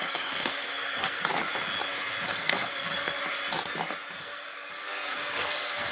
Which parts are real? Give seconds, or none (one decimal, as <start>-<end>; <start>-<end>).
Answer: 1.3-2.3; 3.2-4.2